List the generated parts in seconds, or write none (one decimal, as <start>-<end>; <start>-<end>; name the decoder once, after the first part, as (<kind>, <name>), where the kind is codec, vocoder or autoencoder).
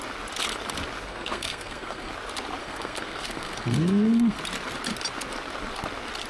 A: 1.1-2.1 (codec, SNAC); 2.6-4.4